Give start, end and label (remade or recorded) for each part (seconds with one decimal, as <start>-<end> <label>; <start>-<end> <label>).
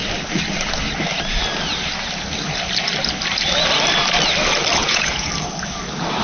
0.0-4.8 recorded; 4.8-5.3 remade; 5.3-6.2 recorded